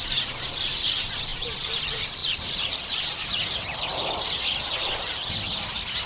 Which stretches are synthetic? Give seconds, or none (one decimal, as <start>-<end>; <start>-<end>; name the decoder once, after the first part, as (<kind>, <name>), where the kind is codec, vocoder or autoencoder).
1.3-1.8 (vocoder, BigVGAN v2); 2.2-3.1

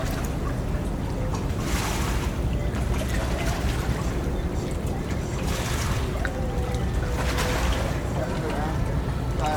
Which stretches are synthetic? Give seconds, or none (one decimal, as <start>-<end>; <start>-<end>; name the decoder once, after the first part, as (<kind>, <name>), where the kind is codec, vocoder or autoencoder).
1.3-2.6 (vocoder, BigVGAN v2); 3.2-6.8

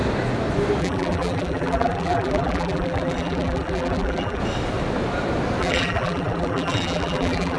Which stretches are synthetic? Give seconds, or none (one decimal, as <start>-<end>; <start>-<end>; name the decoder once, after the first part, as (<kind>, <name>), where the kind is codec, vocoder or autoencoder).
0.8-4.4 (vocoder, BigVGAN v2); 5.6-7.6

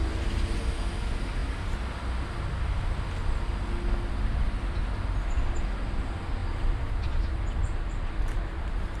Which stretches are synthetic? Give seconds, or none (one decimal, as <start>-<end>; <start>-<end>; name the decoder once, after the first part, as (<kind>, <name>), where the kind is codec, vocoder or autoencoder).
6.4-9.0 (vocoder, BigVGAN v2)